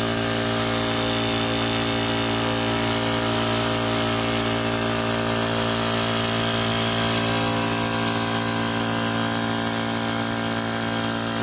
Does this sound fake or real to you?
real